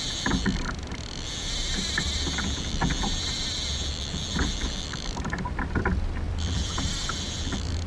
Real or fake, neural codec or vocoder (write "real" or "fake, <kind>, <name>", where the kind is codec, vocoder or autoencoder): fake, vocoder, BigVGAN v2